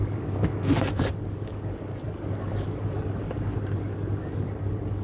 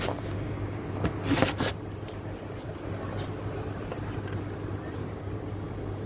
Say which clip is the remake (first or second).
first